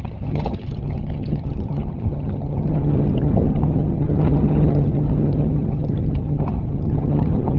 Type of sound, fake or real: fake